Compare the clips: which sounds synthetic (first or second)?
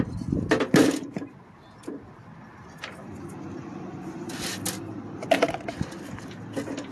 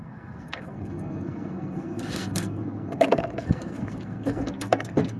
second